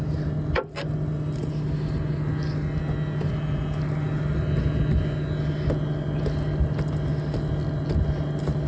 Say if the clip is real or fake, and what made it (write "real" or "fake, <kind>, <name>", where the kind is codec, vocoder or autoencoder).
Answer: real